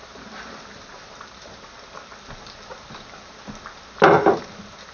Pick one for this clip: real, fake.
real